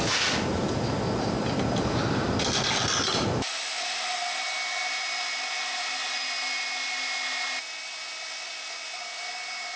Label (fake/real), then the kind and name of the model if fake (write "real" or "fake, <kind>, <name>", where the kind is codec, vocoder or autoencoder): real